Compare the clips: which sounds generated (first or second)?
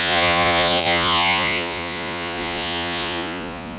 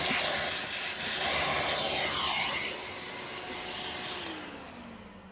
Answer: first